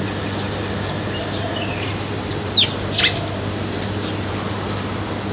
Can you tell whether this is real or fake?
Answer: real